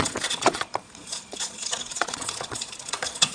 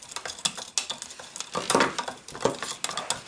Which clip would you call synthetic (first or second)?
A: first